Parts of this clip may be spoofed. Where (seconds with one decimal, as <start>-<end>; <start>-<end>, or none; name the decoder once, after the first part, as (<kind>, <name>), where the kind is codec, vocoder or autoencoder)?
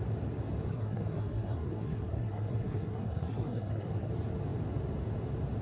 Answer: 0.7-4.1 (codec, SNAC)